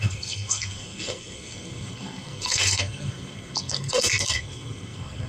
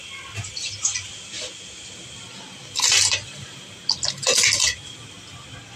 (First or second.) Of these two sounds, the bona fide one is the second